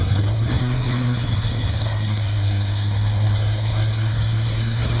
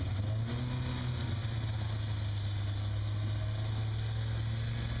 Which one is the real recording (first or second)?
second